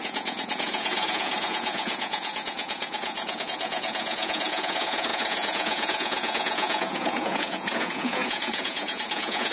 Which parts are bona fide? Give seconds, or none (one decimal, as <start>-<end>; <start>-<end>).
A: none